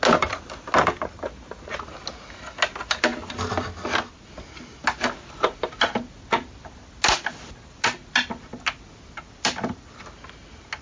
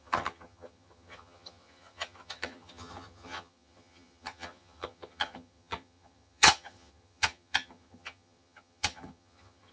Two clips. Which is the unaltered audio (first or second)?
first